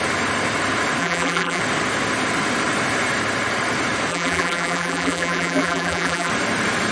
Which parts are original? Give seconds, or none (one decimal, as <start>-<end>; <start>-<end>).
0.0-1.0; 1.6-4.1; 6.3-6.9